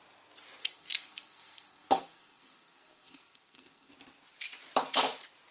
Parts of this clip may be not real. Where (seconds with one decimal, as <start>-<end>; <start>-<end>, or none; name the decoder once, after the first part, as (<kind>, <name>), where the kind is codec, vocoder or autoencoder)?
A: 0.6-3.9 (codec, SNAC)